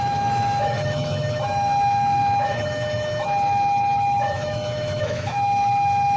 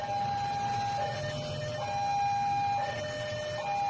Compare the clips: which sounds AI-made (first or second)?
first